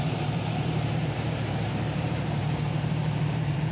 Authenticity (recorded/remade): remade